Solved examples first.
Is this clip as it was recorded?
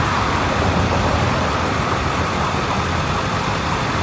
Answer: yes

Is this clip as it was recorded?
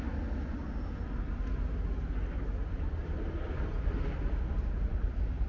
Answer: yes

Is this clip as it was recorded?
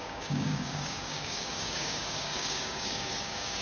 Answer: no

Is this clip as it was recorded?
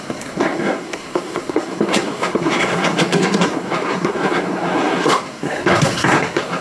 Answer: no